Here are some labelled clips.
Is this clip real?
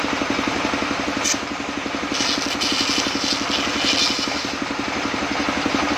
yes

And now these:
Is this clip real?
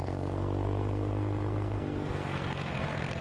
no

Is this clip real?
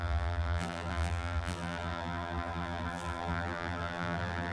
no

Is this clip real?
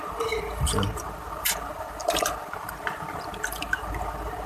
no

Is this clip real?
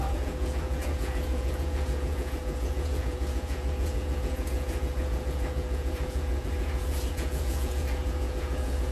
no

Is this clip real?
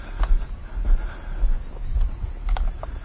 yes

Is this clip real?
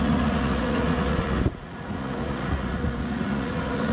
no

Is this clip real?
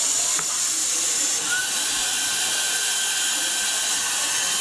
yes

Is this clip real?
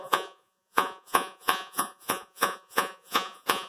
no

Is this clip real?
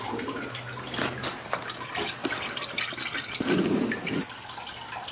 yes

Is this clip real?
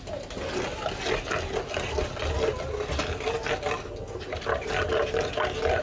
yes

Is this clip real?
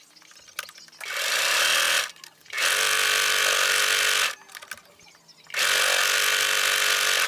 yes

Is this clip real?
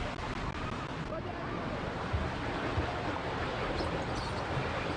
yes